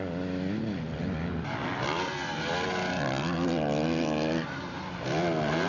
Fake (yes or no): no